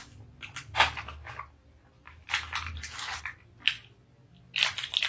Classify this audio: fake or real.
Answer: real